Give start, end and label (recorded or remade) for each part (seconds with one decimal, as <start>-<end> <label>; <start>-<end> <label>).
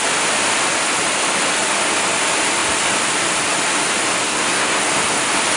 0.0-4.2 recorded; 4.2-4.8 remade; 4.8-5.6 recorded